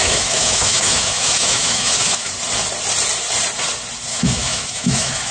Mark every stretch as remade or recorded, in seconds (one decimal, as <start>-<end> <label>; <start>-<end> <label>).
0.0-2.3 remade; 2.3-4.1 recorded; 4.1-5.3 remade